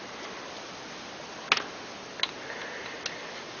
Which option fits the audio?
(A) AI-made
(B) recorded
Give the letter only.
B